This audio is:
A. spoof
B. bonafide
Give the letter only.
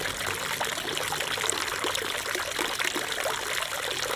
B